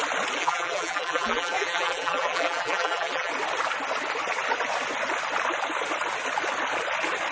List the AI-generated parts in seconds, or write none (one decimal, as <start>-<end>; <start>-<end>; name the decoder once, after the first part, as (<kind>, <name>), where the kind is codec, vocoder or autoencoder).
0.4-3.3 (vocoder, BigVGAN v2)